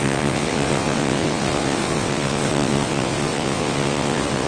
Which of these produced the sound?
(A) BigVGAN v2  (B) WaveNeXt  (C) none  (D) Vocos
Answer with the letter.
B